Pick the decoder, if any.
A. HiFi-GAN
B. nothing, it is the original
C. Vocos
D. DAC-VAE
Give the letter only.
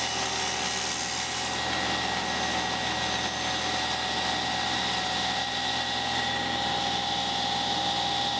B